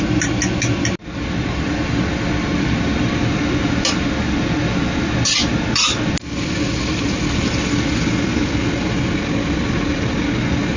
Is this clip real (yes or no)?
yes